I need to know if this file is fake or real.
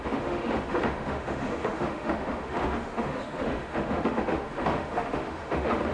fake